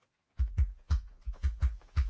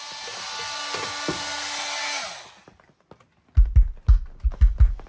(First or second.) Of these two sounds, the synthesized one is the first